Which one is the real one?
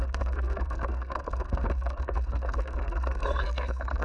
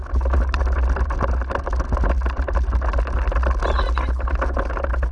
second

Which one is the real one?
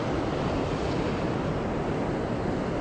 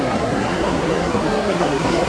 first